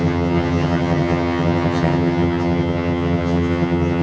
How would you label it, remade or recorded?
remade